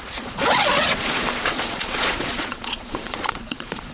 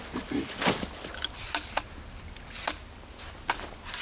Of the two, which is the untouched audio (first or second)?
second